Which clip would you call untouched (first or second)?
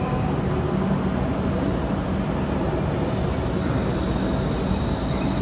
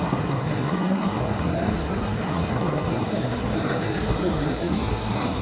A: first